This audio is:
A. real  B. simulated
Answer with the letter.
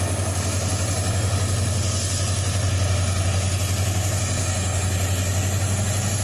A